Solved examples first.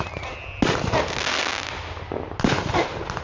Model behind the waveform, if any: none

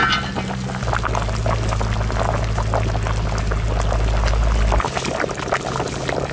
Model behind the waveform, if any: none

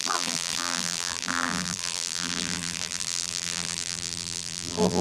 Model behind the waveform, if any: vocoder, BigVGAN v2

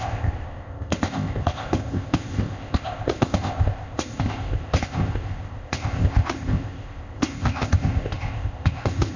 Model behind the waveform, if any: codec, ZipCodec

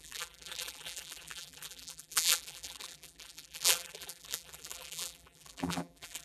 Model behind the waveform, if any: vocoder, BigVGAN v2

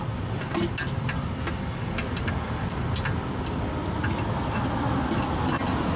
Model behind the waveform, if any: none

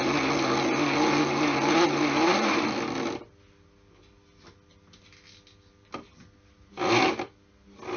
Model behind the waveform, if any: none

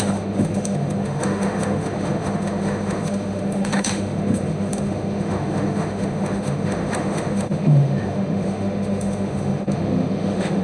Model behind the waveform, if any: autoencoder, DAC-VAE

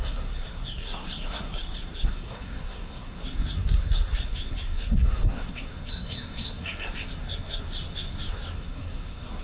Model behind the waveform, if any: codec, SNAC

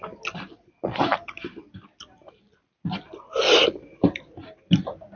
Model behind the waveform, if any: none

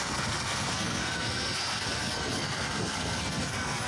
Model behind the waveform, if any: codec, SNAC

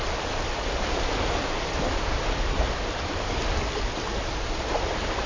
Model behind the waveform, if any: none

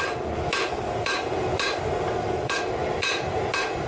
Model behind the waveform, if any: none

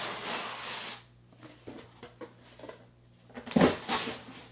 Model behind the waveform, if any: none